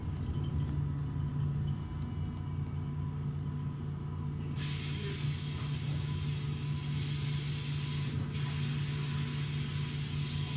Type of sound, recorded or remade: recorded